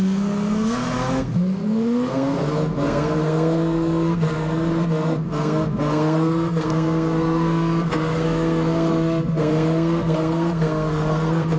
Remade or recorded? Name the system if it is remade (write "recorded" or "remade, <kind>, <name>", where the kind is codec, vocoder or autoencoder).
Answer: remade, codec, SNAC